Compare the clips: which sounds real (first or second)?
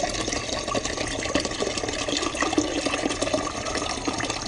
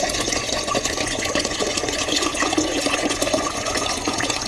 first